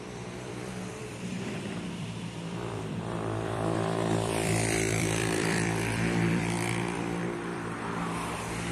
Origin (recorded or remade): remade